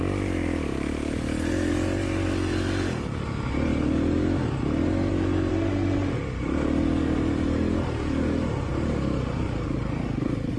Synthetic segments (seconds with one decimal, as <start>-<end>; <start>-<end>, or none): 5.5-6.1